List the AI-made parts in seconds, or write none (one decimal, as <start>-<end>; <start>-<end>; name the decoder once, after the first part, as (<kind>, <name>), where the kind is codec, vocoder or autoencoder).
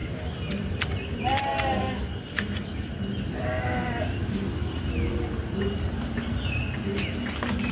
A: 0.6-1.3 (vocoder, BigVGAN v2); 5.1-6.6